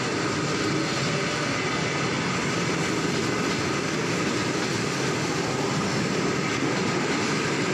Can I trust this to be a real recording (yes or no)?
yes